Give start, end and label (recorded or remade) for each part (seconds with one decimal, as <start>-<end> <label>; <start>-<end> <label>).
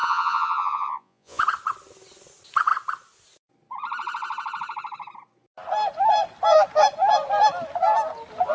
0.0-1.4 remade; 1.4-8.5 recorded